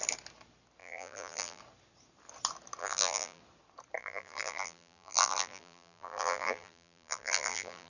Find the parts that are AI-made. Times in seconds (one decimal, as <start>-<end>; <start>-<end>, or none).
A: 0.8-1.6; 2.8-3.4; 4.0-7.9